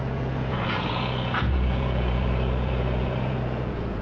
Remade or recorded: remade